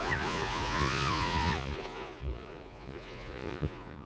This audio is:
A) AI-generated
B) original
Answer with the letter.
A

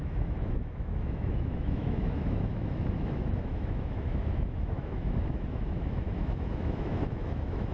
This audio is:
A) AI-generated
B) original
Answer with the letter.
A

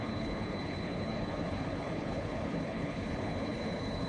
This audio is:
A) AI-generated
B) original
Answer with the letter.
A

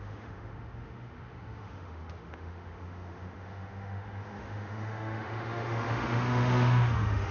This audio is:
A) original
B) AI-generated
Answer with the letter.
B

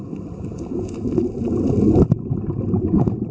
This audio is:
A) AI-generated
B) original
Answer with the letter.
B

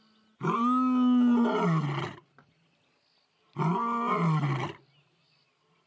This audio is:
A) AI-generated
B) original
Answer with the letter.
B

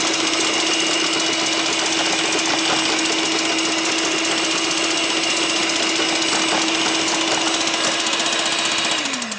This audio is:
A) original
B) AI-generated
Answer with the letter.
A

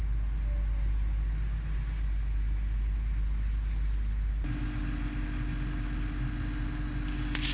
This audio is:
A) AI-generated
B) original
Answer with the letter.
B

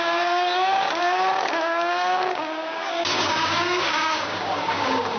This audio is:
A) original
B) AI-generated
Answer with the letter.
B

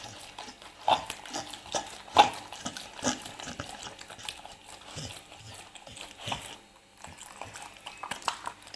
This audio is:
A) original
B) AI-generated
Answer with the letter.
A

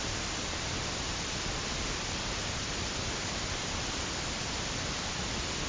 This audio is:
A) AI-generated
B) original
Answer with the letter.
A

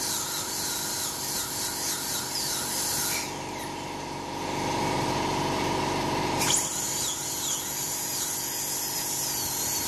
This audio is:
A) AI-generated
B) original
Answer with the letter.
B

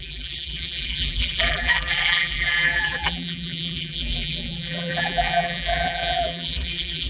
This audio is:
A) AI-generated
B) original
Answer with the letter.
A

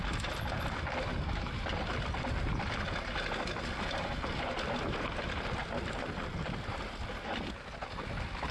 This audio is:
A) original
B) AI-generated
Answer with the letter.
A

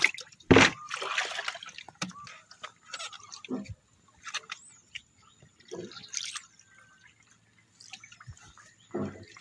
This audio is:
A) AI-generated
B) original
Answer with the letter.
B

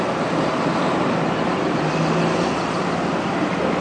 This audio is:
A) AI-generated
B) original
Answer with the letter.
B